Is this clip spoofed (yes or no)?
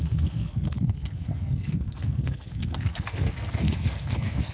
yes